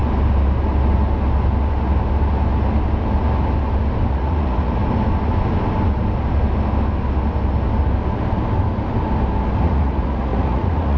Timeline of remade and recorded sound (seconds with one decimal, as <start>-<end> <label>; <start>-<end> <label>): 0.0-4.1 recorded; 4.1-4.8 remade; 4.8-9.6 recorded; 9.6-11.0 remade